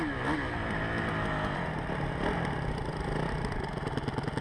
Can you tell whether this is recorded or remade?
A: recorded